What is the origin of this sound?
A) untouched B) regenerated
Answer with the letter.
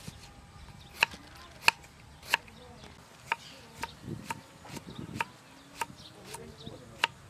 A